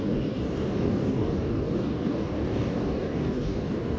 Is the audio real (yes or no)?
no